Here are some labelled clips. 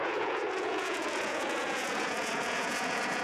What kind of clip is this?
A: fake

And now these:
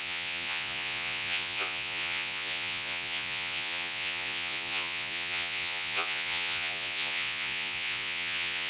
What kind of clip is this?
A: fake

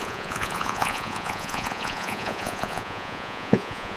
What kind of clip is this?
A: fake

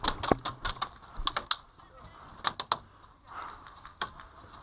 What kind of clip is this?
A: real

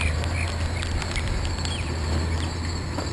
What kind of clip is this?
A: real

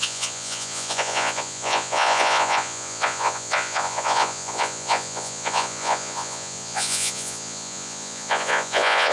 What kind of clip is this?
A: fake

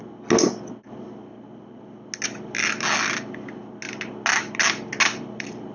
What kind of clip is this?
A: real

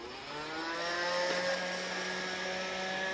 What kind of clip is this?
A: real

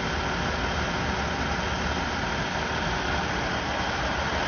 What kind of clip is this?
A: real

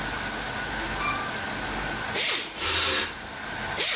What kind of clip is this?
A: real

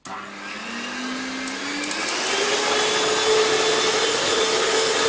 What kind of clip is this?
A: real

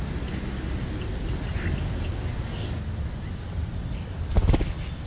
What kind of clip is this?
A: real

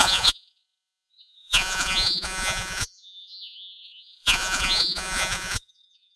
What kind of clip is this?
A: fake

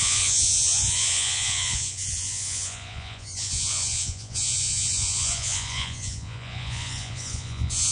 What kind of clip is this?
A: fake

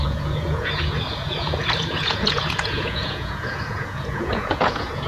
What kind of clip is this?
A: fake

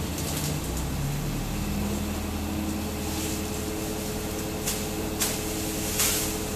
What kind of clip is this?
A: real